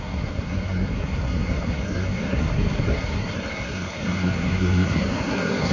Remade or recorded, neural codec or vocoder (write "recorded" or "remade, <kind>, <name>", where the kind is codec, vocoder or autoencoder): remade, codec, SNAC